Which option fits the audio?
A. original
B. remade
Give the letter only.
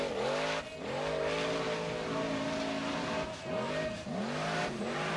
A